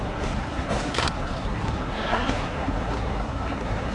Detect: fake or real fake